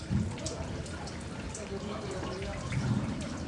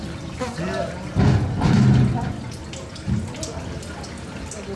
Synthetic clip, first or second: first